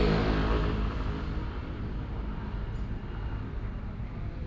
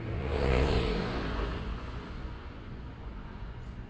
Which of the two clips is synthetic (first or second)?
second